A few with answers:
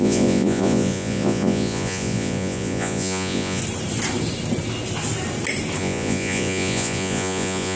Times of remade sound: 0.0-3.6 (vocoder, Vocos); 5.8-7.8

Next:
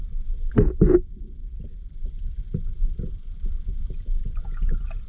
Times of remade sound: 1.4-3.6 (vocoder, BigVGAN v2)

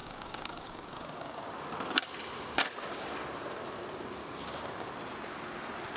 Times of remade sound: 0.0-1.4 (codec, DAC); 4.2-4.9

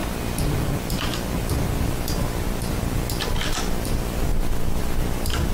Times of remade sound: 0.0-5.5 (vocoder, BigVGAN v2)

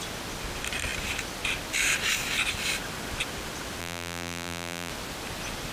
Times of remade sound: 3.8-4.9 (vocoder, BigVGAN v2)

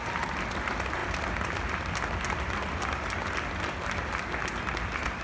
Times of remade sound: none

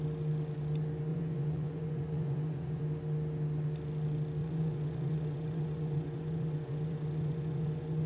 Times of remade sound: 1.1-2.8 (vocoder, Vocos); 4.4-8.1

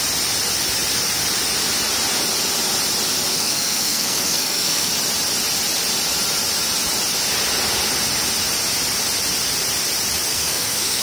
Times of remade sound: 3.3-4.9 (codec, SNAC); 10.3-11.0